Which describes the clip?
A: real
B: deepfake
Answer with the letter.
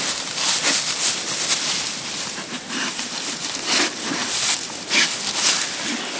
A